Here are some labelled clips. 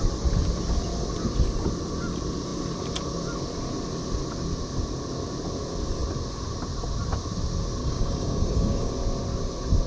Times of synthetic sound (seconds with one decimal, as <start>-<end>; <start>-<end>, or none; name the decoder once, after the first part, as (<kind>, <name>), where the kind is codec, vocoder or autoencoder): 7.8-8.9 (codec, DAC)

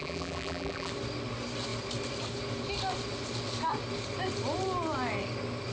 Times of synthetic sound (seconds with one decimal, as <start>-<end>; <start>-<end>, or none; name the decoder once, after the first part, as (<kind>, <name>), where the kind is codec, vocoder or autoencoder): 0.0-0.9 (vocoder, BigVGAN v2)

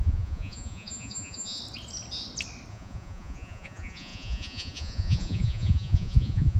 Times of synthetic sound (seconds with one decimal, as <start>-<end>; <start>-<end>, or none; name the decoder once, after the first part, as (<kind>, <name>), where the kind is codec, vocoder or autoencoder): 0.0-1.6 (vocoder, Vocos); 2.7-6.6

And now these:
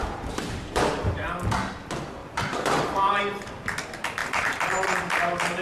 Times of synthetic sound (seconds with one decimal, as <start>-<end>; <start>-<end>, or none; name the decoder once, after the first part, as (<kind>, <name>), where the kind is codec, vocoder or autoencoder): 0.0-1.1 (vocoder, BigVGAN v2); 2.2-3.2; 4.2-5.0

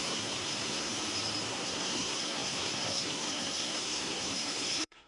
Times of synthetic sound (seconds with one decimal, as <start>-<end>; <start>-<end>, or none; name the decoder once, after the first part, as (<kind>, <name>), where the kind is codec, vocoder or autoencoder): 0.0-0.9 (codec, SNAC); 1.5-5.1